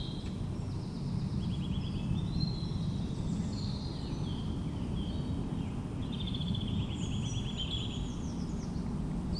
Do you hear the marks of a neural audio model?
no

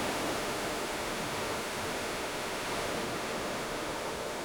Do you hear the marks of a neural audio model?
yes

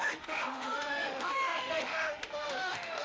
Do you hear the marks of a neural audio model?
yes